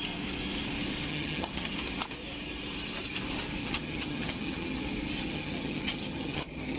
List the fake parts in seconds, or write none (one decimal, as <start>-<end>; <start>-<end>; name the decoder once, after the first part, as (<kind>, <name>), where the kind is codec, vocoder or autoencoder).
1.1-1.7 (vocoder, HiFi-GAN); 3.6-4.8; 5.2-6.8